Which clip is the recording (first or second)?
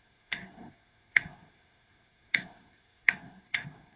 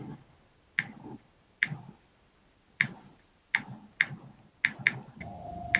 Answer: second